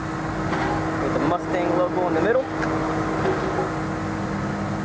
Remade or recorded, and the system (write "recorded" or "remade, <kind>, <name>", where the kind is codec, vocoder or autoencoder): recorded